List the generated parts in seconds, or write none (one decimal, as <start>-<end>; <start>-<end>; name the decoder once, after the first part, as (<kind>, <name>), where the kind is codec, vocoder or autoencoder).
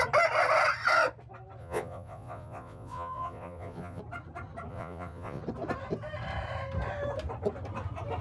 1.6-4.0 (vocoder, Vocos); 4.7-5.4